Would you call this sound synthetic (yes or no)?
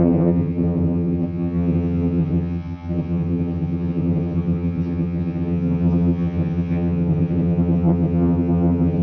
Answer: yes